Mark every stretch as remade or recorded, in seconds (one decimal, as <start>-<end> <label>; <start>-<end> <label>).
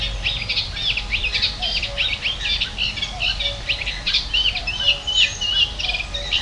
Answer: 0.0-6.4 recorded